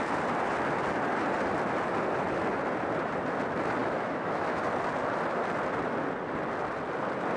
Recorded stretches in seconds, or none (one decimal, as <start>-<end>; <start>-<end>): 0.0-3.8; 4.6-7.4